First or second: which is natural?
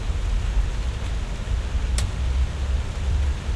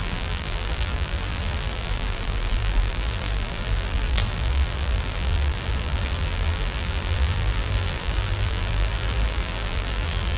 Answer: first